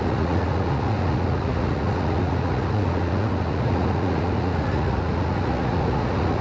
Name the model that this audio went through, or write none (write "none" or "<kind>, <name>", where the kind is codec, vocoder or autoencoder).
vocoder, Vocos